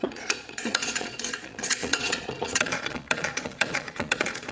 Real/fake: fake